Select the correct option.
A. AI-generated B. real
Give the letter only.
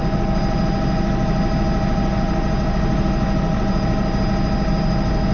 B